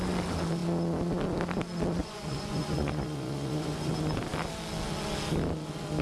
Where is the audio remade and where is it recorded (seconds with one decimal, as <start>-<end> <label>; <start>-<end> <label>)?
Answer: 0.0-2.0 recorded; 2.0-3.9 remade; 3.9-6.0 recorded